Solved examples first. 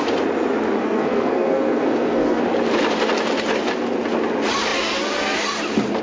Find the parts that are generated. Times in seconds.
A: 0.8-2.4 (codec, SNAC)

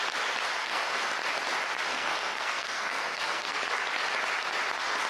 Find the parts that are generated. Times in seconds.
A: 0.6-1.1 (codec, SNAC); 1.9-3.6

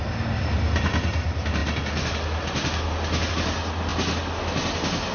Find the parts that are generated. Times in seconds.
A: none

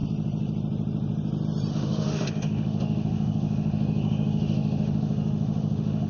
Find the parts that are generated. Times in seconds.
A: 1.7-6.1 (autoencoder, DAC-VAE)

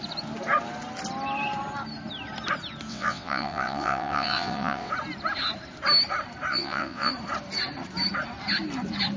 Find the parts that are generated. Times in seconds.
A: 2.9-4.9 (vocoder, WaveNeXt); 6.5-7.1